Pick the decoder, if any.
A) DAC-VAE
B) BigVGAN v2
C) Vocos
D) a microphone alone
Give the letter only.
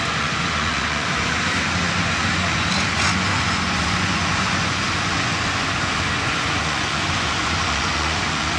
C